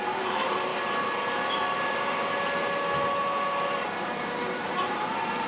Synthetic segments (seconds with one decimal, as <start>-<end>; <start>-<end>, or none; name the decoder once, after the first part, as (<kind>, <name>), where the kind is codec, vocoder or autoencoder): 0.0-0.7 (vocoder, BigVGAN v2); 4.0-5.5